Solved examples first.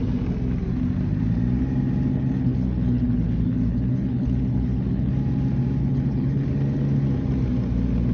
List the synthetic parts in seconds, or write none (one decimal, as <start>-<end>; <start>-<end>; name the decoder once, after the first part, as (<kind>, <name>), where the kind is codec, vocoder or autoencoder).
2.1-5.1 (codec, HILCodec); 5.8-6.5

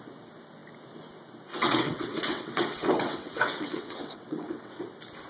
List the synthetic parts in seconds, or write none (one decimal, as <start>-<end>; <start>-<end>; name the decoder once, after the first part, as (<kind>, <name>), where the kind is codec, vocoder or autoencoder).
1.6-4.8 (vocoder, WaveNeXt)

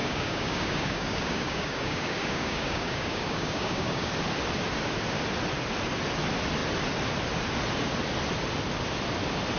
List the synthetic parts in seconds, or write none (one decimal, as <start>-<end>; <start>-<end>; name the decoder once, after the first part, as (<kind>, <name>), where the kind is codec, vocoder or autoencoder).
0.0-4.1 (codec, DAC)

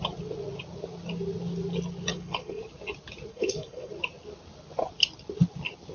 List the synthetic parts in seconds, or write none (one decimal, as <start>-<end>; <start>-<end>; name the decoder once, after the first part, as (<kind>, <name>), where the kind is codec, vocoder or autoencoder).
2.1-2.6 (codec, HILCodec); 3.3-3.9

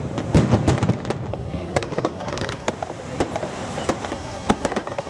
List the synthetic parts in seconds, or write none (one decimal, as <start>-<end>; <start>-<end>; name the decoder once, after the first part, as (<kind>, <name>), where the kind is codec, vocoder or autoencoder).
1.3-2.7 (codec, SNAC); 4.1-5.1

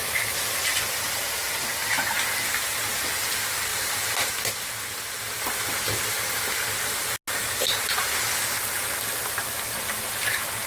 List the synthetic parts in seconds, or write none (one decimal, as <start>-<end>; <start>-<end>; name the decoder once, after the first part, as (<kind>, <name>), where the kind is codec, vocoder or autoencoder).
3.7-4.5 (vocoder, BigVGAN v2)

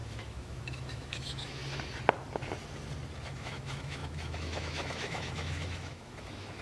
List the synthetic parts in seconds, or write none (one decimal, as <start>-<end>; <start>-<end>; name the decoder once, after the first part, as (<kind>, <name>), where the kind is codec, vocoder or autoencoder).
0.0-1.6 (autoencoder, DAC-VAE); 3.3-6.6

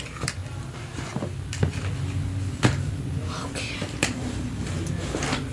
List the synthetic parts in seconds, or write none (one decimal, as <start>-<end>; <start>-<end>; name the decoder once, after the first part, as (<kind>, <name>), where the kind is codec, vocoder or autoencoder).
none